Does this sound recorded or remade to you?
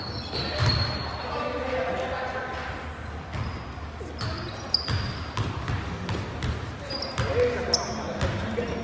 recorded